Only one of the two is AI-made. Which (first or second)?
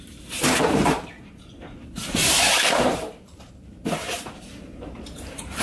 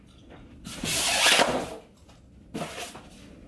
first